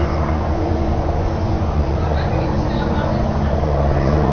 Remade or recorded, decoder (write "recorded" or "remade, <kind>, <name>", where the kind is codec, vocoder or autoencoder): remade, vocoder, Vocos